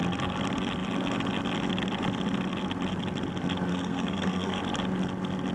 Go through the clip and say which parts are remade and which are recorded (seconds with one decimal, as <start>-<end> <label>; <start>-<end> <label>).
0.0-3.7 recorded; 3.7-4.6 remade; 4.6-5.5 recorded